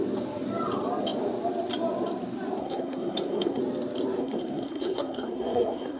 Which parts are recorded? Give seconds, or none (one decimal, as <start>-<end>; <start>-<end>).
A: 0.0-2.6; 3.6-4.2